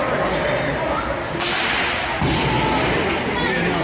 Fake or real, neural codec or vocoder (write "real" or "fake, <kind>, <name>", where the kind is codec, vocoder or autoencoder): real